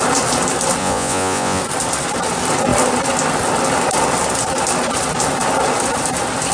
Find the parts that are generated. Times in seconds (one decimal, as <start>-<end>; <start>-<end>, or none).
0.8-1.6